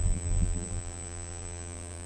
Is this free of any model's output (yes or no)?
no